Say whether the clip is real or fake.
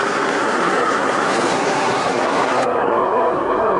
fake